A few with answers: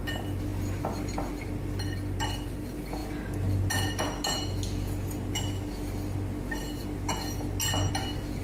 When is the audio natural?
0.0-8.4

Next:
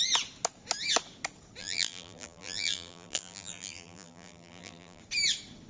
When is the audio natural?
0.0-1.6; 5.0-5.7